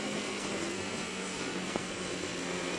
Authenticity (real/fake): fake